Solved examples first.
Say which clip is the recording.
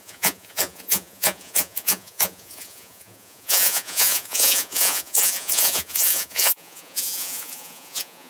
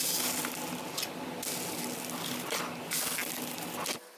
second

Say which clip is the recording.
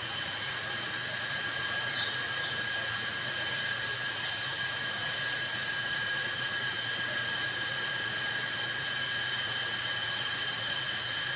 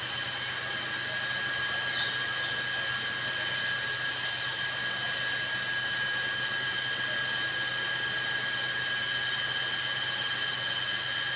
second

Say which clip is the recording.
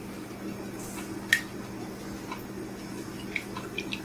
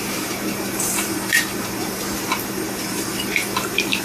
first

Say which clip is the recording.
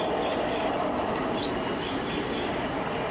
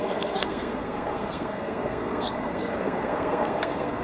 first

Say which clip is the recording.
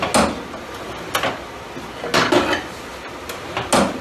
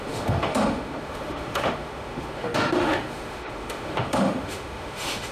first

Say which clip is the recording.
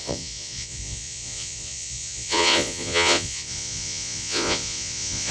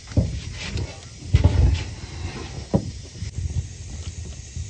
second